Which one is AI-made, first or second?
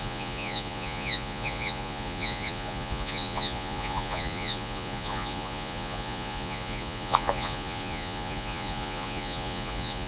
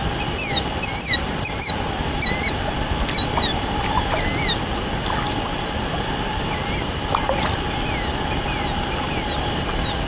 first